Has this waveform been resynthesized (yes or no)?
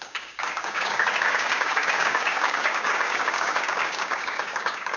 yes